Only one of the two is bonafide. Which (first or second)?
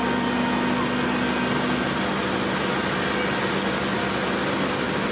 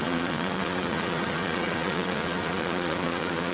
first